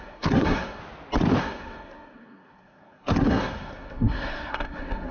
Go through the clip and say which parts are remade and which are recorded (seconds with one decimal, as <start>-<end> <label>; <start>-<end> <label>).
0.0-0.8 remade; 0.8-1.4 recorded; 1.4-5.1 remade